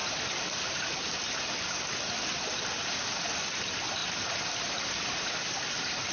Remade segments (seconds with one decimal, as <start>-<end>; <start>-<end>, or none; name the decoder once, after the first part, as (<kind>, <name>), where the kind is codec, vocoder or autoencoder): none